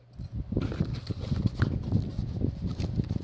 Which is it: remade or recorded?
recorded